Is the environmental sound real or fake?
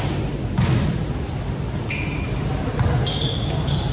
real